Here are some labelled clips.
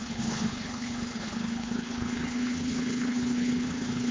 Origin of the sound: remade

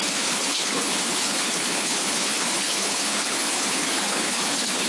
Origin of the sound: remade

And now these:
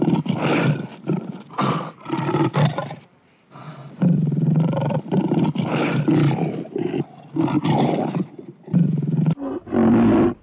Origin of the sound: recorded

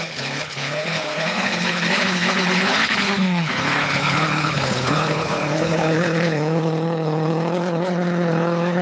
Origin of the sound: remade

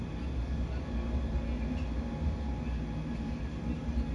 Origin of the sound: recorded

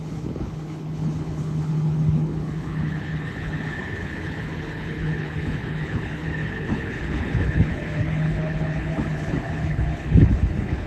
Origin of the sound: remade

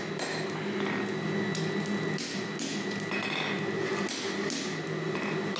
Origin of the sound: recorded